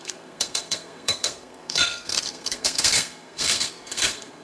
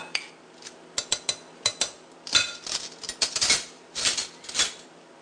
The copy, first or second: first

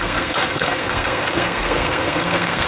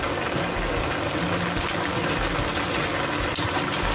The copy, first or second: first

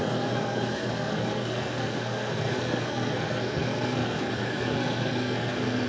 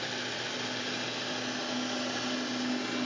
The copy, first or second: first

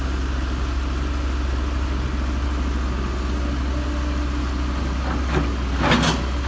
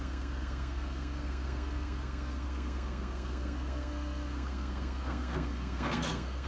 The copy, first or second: second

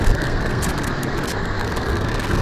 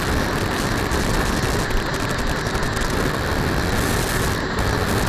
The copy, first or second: first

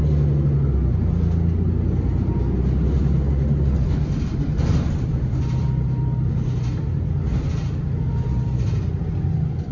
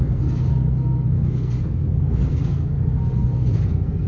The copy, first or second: second